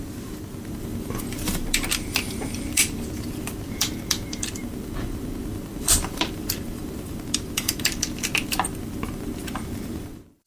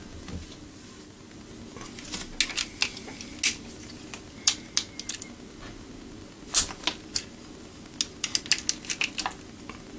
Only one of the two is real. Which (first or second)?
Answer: second